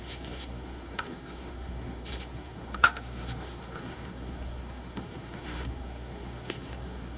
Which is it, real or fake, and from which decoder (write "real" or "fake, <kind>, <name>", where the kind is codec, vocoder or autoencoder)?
fake, codec, SNAC